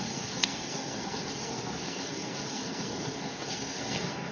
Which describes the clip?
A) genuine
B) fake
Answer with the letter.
B